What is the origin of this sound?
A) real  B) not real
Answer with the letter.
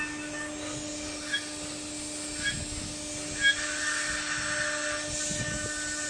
A